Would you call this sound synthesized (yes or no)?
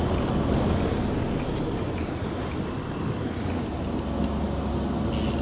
no